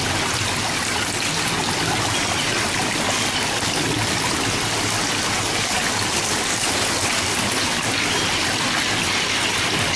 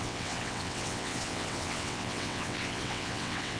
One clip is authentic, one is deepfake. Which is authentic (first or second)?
first